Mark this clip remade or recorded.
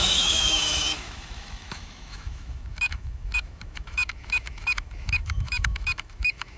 remade